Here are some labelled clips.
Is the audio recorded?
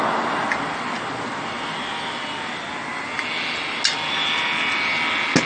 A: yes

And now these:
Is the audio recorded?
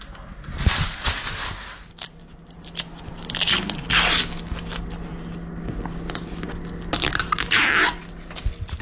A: yes